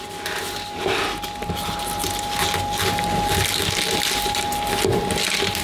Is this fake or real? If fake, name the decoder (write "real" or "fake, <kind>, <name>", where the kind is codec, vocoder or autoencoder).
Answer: real